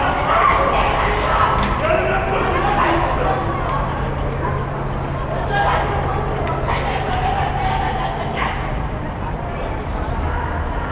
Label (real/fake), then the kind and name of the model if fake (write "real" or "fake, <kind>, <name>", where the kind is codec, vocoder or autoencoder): real